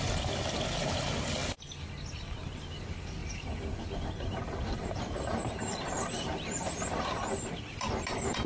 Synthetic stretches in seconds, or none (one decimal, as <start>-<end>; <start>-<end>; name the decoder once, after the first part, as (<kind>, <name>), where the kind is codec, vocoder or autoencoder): 0.0-1.4 (vocoder, BigVGAN v2); 2.4-3.2; 4.6-8.5